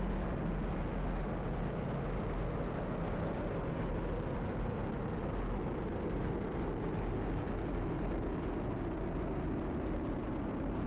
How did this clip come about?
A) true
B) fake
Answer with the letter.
A